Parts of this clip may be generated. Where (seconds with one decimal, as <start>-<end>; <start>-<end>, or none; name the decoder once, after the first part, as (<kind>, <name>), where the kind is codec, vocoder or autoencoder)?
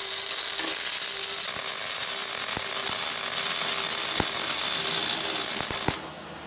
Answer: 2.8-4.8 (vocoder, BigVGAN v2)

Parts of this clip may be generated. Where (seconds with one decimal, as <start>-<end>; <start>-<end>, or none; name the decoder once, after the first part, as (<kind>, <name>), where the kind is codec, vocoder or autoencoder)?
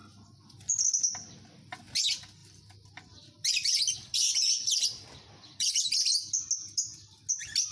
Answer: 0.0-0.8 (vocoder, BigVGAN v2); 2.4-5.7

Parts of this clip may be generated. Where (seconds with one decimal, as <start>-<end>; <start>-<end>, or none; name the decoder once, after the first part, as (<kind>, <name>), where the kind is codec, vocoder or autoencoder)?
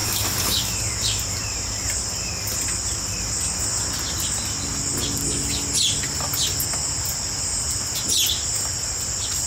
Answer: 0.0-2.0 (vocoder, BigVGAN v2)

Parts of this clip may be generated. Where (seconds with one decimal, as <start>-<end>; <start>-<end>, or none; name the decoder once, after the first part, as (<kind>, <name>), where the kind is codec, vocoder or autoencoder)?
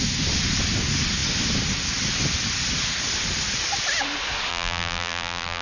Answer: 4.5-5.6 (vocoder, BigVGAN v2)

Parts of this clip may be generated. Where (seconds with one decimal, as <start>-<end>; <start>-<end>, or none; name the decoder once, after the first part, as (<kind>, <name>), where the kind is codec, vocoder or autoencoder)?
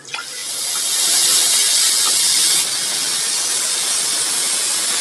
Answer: none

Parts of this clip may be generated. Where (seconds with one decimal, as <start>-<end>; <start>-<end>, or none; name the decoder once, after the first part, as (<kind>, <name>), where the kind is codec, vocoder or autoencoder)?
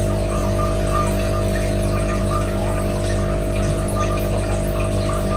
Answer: none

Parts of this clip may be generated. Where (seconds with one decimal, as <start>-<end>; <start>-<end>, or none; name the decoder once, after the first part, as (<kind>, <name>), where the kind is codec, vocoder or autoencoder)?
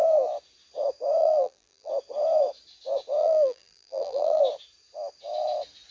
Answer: 1.2-1.9 (vocoder, BigVGAN v2); 3.2-4.4